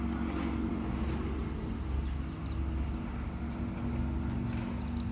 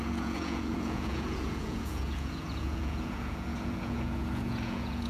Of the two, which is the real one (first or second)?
first